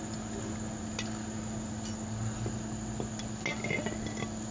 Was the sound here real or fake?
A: real